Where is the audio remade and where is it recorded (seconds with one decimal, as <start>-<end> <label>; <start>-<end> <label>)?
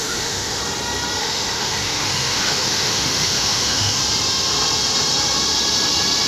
0.0-0.6 remade; 0.6-1.2 recorded; 1.2-4.0 remade; 4.0-6.3 recorded